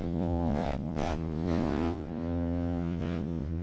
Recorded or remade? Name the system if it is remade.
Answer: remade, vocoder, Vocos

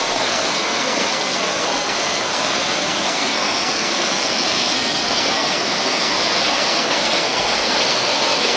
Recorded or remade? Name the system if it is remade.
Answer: remade, codec, SNAC